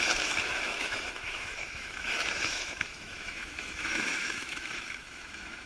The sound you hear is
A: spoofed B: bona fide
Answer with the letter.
A